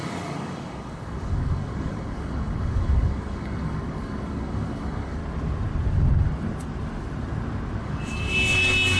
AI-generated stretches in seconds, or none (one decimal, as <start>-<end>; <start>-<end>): 0.0-5.2; 7.8-9.0